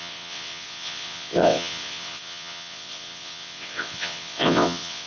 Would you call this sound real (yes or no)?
no